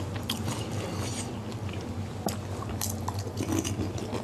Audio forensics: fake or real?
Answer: real